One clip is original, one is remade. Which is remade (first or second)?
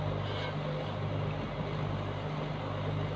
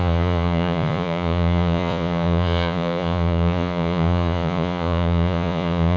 second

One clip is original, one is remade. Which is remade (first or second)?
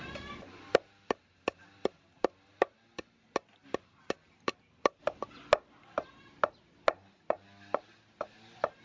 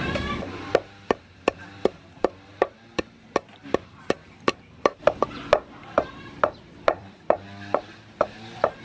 second